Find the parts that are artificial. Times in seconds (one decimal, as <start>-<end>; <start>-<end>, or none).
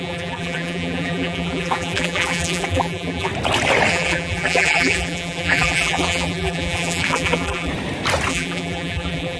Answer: 0.0-3.3; 3.9-7.7; 8.3-9.4